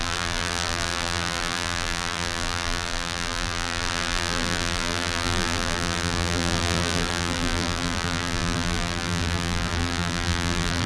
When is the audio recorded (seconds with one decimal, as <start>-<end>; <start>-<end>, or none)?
none